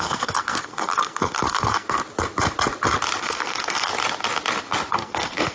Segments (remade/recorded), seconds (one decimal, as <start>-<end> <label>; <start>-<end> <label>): 0.0-2.0 remade; 2.0-3.2 recorded; 3.2-3.9 remade; 3.9-4.9 recorded; 4.9-5.5 remade